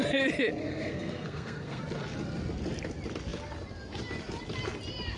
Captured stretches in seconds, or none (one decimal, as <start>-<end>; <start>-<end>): 0.0-0.6; 1.8-5.2